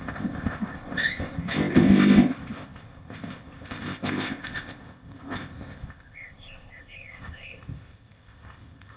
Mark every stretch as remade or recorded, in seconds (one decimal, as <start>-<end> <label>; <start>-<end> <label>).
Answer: 0.0-9.0 remade

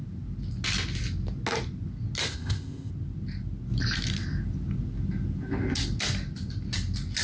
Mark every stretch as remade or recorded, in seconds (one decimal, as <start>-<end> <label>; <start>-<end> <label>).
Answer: 0.0-2.2 recorded; 2.2-2.9 remade; 2.9-7.2 recorded

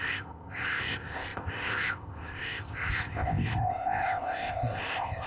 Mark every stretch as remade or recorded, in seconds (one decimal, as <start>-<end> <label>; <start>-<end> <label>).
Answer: 0.0-5.3 remade